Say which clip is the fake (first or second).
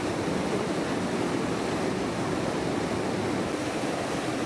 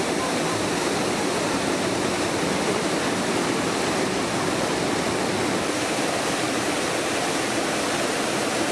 second